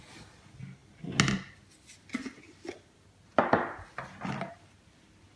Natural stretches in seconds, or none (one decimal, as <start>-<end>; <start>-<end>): 0.0-5.4